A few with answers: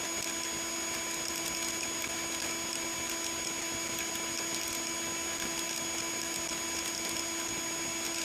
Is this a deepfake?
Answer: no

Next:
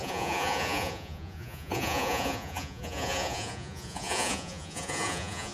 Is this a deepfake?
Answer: yes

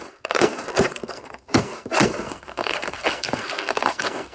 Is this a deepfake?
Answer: yes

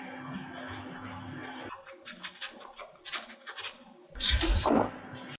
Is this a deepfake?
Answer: no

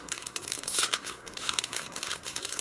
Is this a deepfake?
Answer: yes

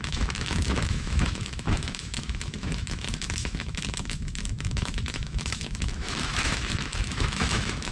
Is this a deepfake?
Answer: yes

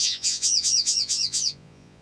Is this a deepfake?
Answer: yes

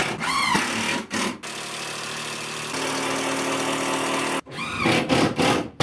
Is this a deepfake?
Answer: no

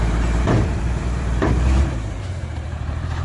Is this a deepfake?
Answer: yes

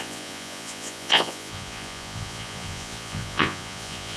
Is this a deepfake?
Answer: yes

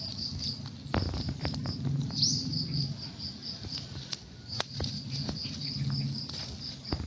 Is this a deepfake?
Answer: no